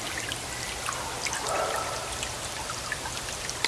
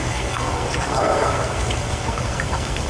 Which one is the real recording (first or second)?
first